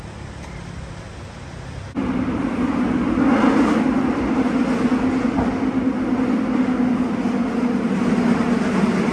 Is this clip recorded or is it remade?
recorded